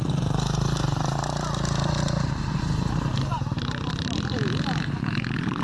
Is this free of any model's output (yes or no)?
no